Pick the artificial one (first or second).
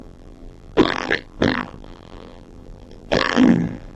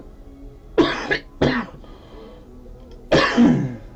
first